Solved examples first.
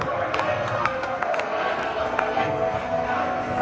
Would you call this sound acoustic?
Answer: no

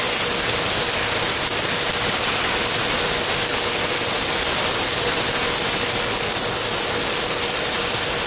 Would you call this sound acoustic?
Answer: yes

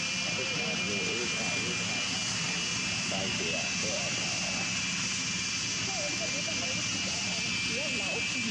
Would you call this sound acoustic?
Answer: yes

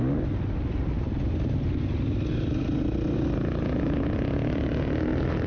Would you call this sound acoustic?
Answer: yes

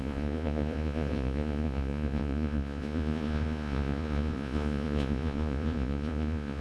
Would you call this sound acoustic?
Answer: no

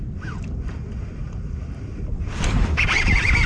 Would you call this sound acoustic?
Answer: no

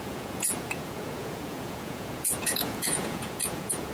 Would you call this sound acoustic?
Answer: no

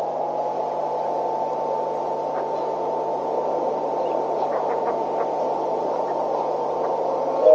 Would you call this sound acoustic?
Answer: yes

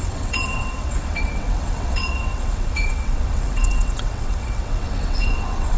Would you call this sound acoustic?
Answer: no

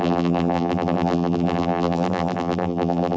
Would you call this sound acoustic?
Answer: no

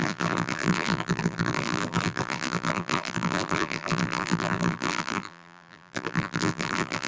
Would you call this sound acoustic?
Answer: no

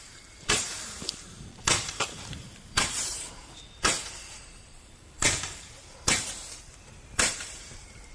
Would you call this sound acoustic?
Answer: no